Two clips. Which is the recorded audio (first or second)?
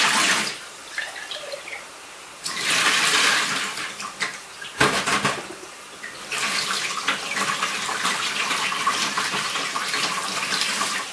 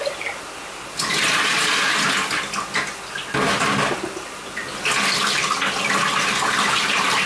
second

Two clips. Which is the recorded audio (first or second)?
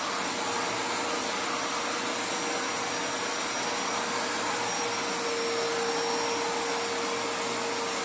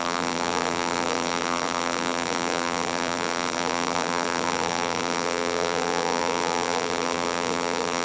first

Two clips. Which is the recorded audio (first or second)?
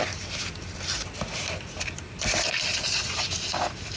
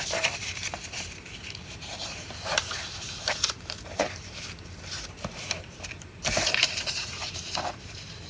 first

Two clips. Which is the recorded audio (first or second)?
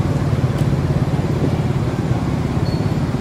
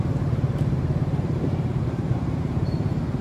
first